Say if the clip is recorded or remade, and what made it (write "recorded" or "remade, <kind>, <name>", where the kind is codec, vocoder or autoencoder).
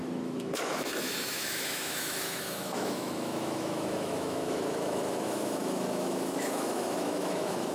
remade, autoencoder, DAC-VAE